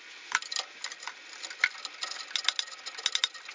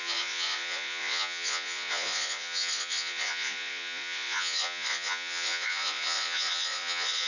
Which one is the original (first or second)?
first